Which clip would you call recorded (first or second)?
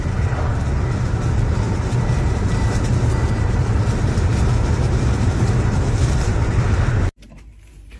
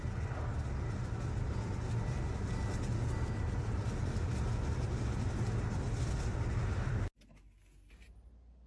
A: second